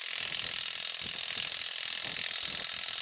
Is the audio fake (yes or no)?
no